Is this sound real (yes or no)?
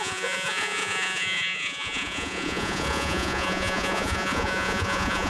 no